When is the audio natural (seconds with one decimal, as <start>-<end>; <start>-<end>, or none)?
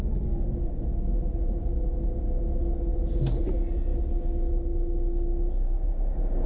0.0-6.5